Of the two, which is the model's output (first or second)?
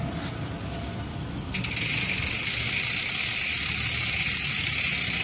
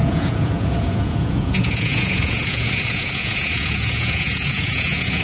second